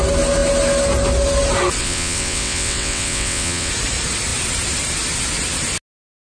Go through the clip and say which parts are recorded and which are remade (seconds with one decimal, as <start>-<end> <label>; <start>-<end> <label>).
0.0-1.8 recorded; 1.8-3.7 remade; 3.7-6.4 recorded